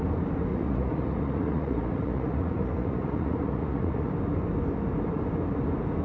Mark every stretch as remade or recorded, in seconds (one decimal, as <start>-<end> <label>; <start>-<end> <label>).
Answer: 0.0-0.5 recorded; 0.5-4.1 remade; 4.1-6.0 recorded